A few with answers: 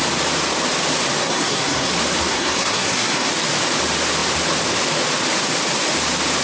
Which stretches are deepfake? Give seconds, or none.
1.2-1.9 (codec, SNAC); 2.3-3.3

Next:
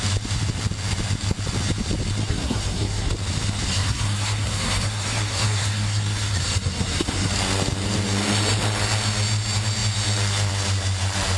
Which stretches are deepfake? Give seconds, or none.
2.2-3.1 (codec, SNAC); 3.7-7.3